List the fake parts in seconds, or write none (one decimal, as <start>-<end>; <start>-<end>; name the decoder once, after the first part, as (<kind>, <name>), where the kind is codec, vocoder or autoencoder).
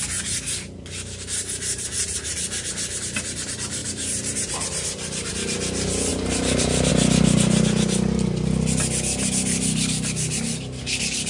3.8-5.3 (vocoder, BigVGAN v2); 6.1-6.9